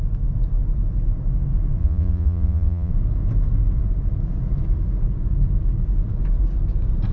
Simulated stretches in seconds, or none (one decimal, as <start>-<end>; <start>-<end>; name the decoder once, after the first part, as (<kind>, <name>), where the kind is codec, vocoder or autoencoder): 1.8-2.9 (vocoder, Vocos)